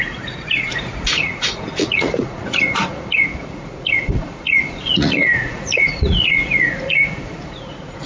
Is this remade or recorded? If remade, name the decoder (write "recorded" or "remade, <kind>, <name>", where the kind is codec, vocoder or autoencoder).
remade, vocoder, Vocos